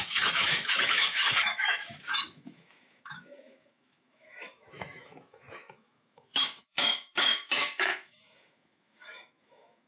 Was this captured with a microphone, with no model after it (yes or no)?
no